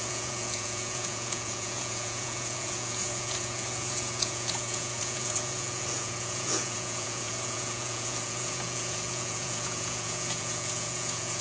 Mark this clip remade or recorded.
remade